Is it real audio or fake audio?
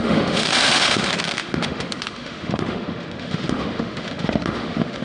fake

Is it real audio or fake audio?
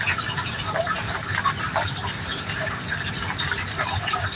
fake